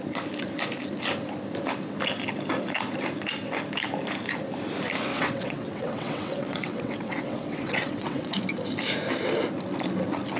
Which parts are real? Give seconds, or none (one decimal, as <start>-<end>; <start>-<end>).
0.0-5.1; 8.4-10.4